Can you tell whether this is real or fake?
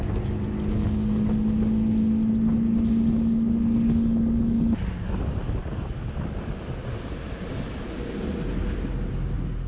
real